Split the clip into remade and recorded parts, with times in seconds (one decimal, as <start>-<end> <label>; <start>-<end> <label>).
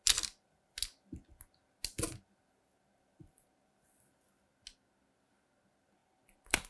0.0-6.7 recorded